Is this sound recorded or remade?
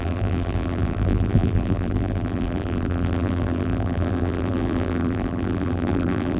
remade